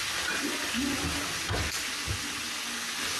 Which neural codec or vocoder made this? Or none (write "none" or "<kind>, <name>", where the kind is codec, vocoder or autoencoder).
none